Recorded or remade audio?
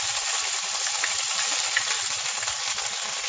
recorded